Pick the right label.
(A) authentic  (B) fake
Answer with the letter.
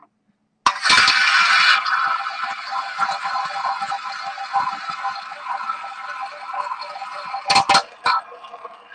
A